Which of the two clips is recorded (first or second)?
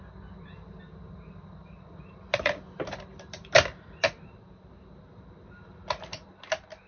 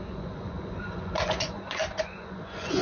first